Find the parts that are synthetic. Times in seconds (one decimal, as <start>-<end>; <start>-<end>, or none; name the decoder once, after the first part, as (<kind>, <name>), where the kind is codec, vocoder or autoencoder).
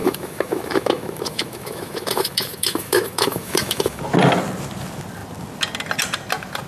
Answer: 0.0-4.0 (autoencoder, DAC-VAE)